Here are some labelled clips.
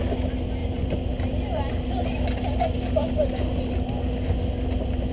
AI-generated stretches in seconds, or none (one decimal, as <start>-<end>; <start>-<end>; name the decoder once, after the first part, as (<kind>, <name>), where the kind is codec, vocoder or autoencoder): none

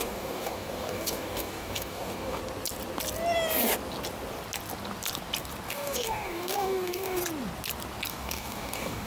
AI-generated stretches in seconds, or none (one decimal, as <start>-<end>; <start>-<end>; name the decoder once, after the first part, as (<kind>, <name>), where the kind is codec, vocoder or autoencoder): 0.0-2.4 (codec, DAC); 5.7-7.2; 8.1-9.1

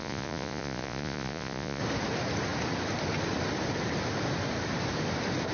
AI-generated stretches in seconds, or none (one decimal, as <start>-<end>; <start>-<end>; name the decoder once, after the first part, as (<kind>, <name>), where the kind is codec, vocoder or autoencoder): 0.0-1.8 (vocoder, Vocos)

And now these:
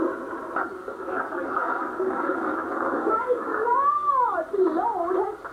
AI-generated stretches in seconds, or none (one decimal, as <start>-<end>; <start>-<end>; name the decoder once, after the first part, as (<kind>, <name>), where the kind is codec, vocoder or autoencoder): 0.8-4.1 (codec, DAC)

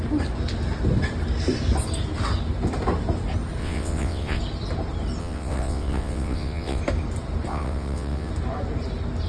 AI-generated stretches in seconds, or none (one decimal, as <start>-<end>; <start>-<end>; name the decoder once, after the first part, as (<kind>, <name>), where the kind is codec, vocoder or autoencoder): 3.6-4.4 (vocoder, WaveNeXt); 5.2-6.8; 7.5-8.3